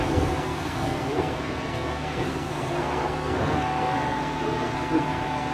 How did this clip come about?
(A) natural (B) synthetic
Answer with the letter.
B